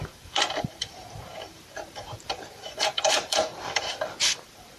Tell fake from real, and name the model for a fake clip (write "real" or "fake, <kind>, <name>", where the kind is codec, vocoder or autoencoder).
fake, vocoder, BigVGAN v2